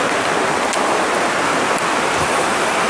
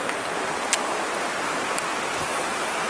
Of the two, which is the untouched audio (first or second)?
second